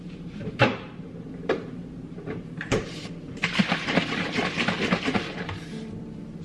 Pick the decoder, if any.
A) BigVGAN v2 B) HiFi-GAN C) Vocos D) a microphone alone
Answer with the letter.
A